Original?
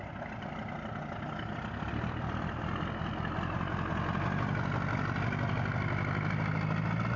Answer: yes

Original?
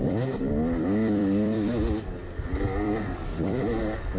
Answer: no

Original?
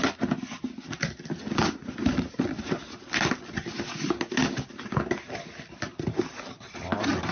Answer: yes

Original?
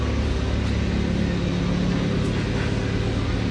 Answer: yes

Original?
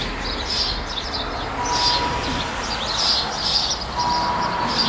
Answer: yes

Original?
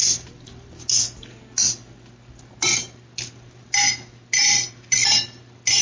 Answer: yes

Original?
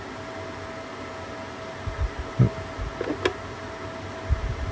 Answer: yes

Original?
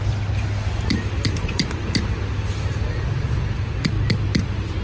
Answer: yes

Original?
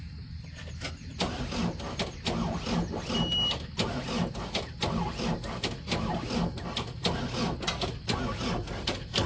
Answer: yes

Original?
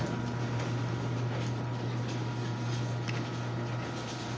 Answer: yes